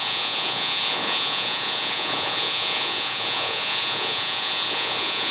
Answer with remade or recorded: remade